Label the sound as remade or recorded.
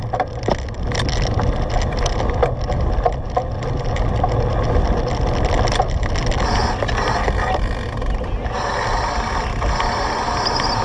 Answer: recorded